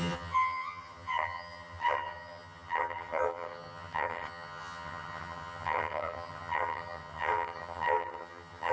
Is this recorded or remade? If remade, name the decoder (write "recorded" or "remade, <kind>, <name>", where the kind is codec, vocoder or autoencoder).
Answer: remade, vocoder, HiFi-GAN